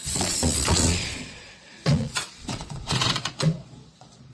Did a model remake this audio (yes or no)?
yes